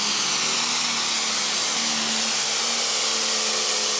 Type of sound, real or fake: real